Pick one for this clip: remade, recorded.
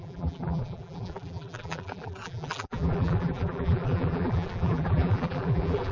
remade